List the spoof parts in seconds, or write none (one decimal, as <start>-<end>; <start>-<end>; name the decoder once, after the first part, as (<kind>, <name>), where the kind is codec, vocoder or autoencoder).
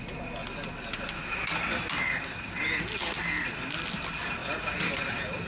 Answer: none